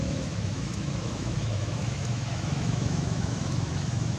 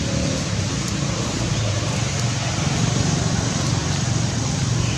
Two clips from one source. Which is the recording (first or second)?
second